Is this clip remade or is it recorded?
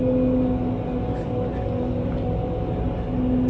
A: recorded